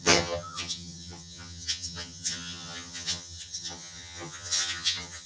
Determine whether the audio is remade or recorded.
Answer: remade